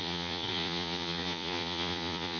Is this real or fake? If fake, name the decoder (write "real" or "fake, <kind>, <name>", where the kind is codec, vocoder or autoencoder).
fake, vocoder, Vocos